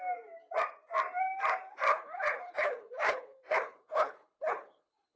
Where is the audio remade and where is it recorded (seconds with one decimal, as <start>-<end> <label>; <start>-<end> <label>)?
0.0-1.9 recorded; 1.9-5.2 remade